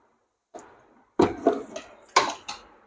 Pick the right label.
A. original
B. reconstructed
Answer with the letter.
A